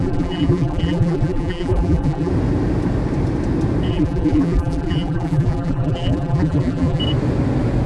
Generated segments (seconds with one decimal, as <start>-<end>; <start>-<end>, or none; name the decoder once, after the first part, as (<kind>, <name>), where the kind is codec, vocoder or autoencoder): 0.0-2.3 (vocoder, BigVGAN v2); 3.9-7.0